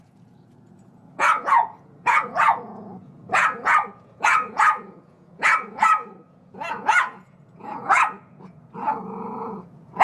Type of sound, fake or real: fake